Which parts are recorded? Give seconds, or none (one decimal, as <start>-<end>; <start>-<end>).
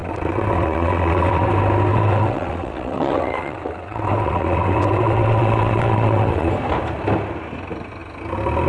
1.5-1.9; 6.5-8.7